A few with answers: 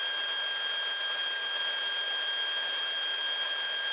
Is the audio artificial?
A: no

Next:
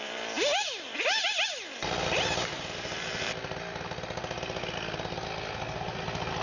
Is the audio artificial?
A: no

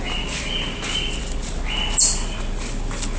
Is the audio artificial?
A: no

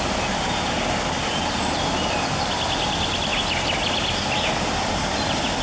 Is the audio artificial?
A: no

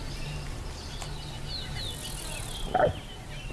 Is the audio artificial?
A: no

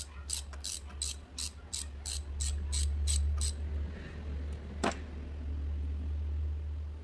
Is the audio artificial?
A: no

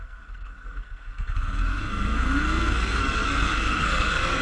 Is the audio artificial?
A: yes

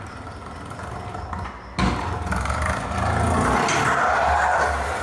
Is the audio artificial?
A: no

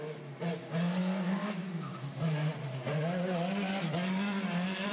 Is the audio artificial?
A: no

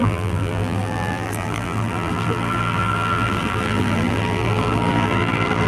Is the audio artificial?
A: yes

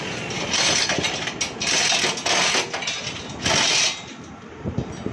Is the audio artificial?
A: no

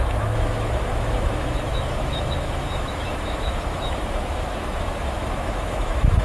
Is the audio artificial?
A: yes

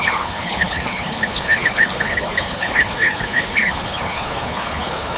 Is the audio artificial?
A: yes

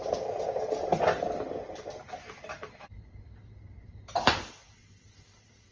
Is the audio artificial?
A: yes